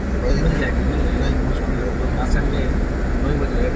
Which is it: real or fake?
real